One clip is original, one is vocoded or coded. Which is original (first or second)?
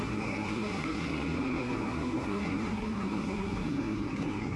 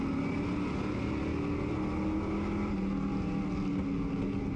second